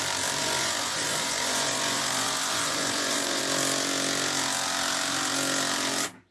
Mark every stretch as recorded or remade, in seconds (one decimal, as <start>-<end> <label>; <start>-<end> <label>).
0.0-0.4 recorded; 0.4-3.4 remade; 3.4-6.3 recorded